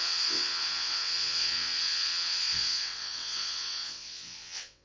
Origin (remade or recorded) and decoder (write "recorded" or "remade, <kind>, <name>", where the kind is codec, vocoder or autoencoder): remade, vocoder, WaveNeXt